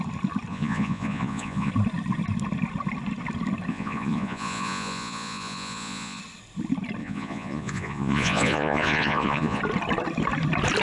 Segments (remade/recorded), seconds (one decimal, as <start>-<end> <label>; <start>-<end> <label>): 0.0-0.5 recorded; 0.5-1.7 remade; 1.7-3.7 recorded; 3.7-6.2 remade; 6.2-7.0 recorded; 7.0-9.6 remade; 9.6-10.8 recorded